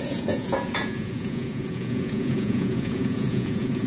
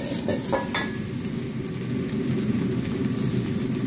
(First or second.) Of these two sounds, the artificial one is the first